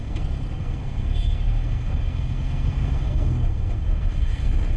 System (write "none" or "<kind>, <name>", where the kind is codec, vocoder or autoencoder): codec, SNAC